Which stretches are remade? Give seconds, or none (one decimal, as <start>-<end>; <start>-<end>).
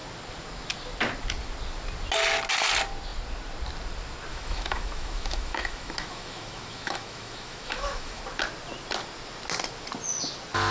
4.3-8.2